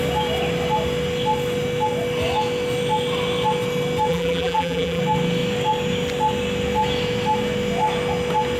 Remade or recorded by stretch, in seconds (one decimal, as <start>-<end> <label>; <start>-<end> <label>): 0.0-4.1 recorded; 4.1-5.0 remade; 5.0-8.6 recorded